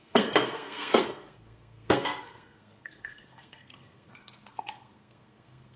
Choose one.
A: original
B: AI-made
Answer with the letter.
B